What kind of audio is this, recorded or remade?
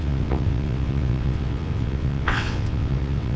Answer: remade